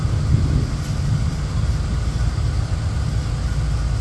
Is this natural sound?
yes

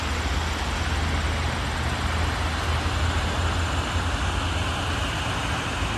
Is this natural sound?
yes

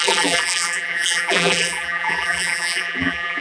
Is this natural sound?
no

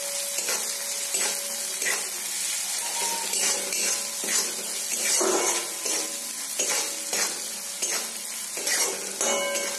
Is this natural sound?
yes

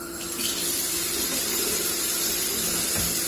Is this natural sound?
yes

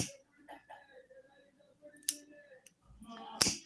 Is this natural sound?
no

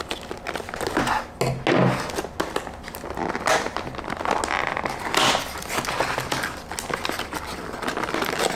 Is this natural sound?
yes